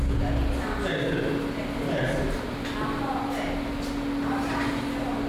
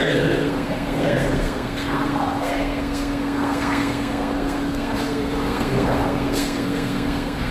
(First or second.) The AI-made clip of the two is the second